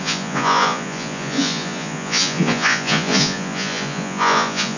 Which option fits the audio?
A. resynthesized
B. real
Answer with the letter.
A